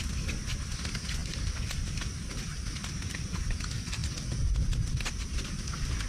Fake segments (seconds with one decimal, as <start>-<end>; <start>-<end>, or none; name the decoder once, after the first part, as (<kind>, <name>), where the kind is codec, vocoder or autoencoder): 1.2-2.2 (vocoder, BigVGAN v2); 2.8-3.4; 4.0-5.4